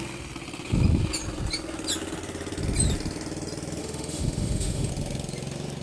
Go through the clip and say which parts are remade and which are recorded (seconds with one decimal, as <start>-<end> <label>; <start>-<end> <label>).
0.0-3.8 recorded; 3.8-4.9 remade; 4.9-5.8 recorded